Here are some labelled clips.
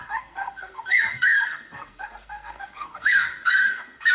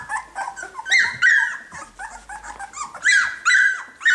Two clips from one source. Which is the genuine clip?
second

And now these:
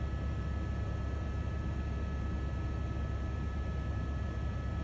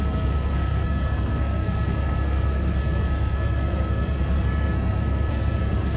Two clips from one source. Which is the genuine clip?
first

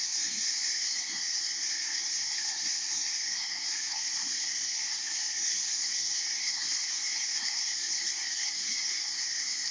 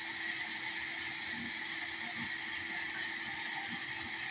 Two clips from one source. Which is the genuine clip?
second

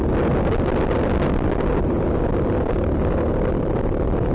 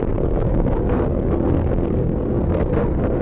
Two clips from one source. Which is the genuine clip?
first